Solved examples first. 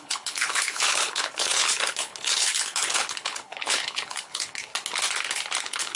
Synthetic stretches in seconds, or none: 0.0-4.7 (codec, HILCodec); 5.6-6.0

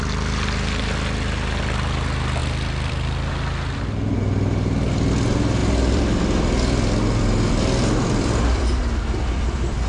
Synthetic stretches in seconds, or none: 2.4-3.3 (vocoder, BigVGAN v2); 5.6-8.8

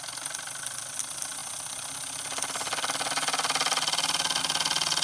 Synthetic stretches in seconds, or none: none

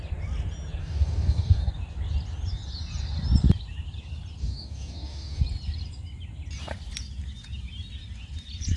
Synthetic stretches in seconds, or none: 0.8-1.7 (codec, DAC); 4.4-5.4

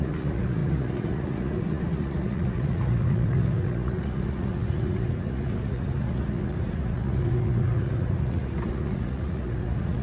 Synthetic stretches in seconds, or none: 0.0-10.0 (vocoder, Vocos)